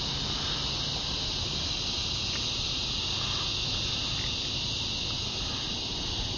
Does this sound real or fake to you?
real